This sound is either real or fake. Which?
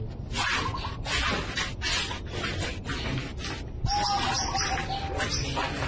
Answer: real